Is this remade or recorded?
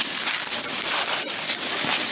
remade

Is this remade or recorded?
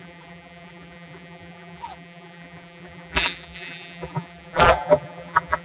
remade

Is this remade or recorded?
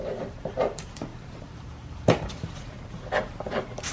remade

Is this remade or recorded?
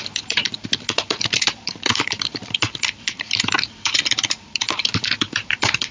remade